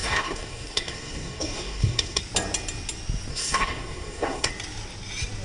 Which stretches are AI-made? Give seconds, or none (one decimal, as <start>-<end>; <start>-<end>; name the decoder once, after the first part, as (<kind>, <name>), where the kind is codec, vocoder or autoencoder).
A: 0.0-2.2 (codec, SNAC); 3.3-4.5